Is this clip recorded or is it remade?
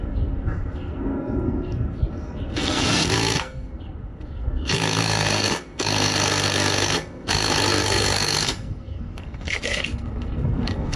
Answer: remade